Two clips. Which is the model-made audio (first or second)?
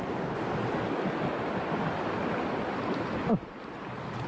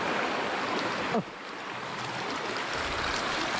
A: second